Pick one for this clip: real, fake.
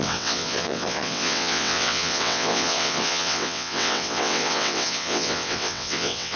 fake